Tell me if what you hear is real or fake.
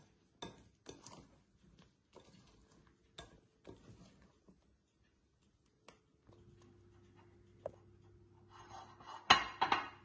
real